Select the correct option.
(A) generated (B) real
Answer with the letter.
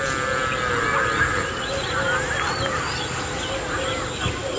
B